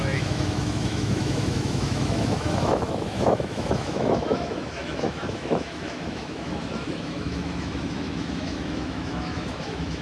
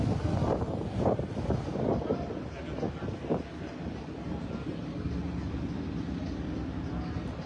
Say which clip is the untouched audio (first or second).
second